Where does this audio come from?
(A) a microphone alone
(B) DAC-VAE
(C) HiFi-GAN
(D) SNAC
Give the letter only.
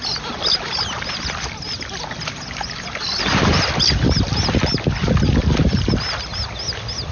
A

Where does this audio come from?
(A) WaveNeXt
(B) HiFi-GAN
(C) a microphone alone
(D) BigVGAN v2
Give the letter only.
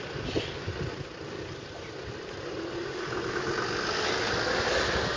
C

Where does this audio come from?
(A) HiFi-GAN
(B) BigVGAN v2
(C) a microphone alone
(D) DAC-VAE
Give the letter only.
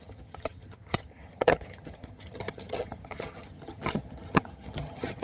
A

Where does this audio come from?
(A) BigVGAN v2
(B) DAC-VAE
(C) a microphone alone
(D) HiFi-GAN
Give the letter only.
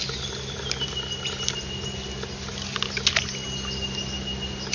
C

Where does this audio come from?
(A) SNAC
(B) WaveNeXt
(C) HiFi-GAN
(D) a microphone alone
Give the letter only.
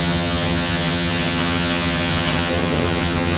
C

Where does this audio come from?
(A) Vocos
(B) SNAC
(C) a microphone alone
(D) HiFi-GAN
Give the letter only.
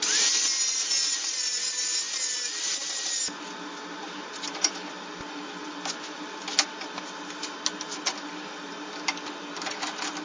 C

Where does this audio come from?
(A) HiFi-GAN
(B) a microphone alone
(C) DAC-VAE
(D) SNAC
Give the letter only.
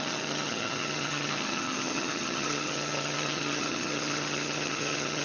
A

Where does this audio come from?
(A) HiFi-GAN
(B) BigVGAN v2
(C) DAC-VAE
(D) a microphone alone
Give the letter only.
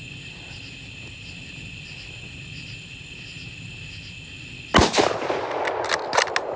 D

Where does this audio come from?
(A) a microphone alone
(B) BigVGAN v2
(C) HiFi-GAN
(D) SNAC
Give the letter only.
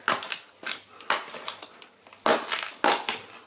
A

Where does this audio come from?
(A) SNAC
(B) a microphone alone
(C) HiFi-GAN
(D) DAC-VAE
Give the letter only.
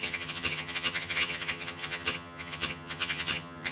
C